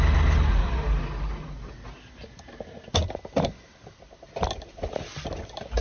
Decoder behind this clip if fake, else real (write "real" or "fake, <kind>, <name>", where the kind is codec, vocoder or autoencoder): real